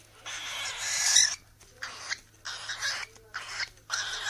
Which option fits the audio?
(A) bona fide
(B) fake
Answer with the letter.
A